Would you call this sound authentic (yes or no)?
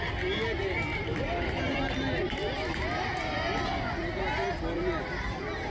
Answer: yes